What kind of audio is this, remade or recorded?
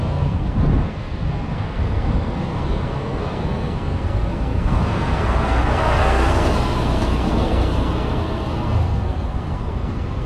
remade